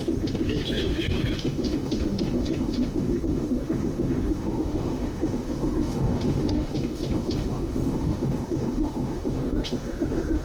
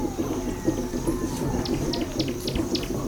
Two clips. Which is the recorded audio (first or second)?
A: second